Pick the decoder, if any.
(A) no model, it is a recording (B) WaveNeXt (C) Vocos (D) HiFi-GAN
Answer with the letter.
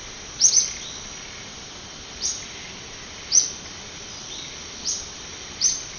A